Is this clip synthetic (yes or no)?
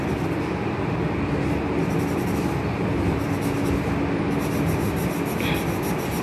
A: no